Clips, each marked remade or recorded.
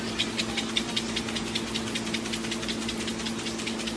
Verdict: recorded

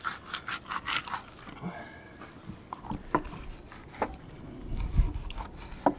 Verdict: recorded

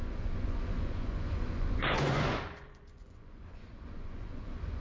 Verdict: remade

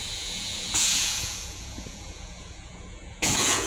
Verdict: remade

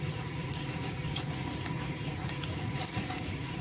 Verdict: remade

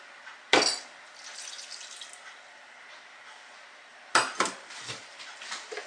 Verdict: recorded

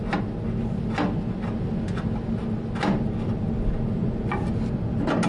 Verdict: recorded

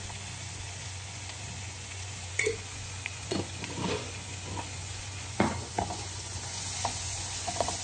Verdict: remade